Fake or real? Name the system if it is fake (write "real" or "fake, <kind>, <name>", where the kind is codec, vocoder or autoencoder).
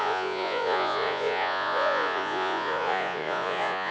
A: fake, vocoder, Vocos